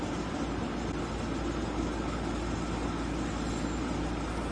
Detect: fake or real real